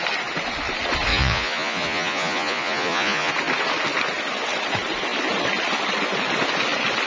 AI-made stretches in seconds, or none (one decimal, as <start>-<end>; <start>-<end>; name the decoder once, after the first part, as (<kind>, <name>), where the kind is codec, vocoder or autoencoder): 1.1-3.3 (vocoder, Vocos)